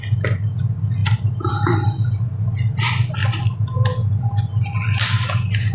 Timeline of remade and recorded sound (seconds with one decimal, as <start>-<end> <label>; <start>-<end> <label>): 0.0-1.0 recorded; 1.0-1.5 remade; 1.5-3.2 recorded; 3.2-4.4 remade; 4.4-5.7 recorded